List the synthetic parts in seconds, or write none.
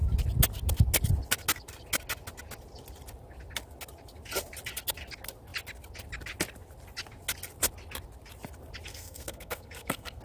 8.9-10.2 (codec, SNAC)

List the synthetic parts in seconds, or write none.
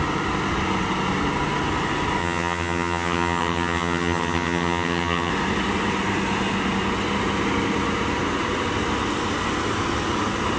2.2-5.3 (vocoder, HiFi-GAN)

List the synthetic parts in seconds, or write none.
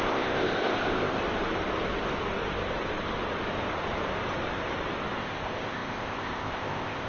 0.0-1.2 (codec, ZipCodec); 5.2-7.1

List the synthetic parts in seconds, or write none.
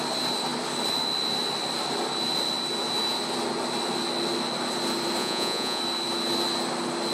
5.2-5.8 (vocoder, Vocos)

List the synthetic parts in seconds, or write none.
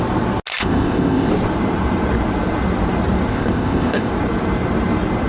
0.6-1.3 (codec, ZipCodec); 3.3-4.1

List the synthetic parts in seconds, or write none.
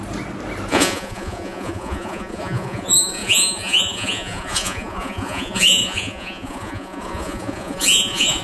0.7-8.4 (vocoder, Vocos)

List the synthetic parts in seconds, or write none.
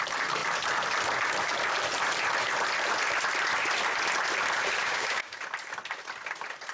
4.8-5.4 (codec, DAC)